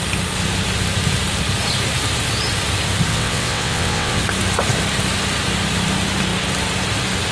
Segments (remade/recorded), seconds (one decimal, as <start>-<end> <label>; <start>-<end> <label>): 0.0-3.1 recorded; 3.1-4.2 remade; 4.2-7.3 recorded